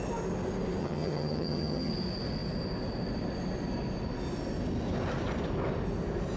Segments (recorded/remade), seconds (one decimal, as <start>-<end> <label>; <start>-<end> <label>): 0.0-0.8 recorded; 0.8-1.9 remade; 1.9-6.4 recorded